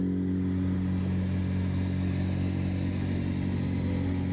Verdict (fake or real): real